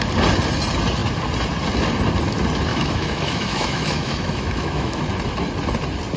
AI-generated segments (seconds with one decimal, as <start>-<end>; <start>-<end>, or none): 2.7-5.0